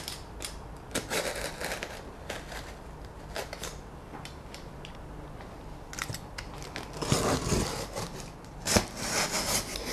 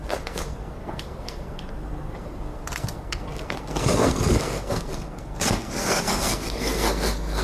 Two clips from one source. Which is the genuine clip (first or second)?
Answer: first